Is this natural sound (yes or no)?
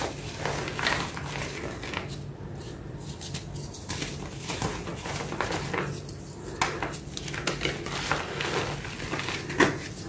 yes